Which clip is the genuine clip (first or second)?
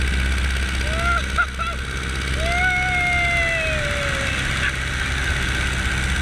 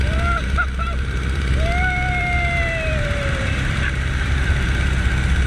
first